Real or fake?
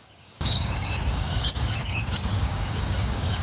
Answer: fake